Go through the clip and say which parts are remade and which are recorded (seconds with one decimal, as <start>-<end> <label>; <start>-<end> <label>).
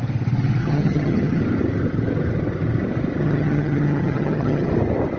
0.0-0.6 recorded; 0.6-1.4 remade; 1.4-3.2 recorded; 3.2-4.7 remade; 4.7-5.2 recorded